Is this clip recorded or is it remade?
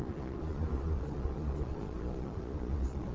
remade